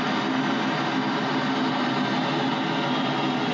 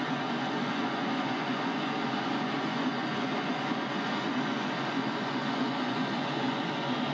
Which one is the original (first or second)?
first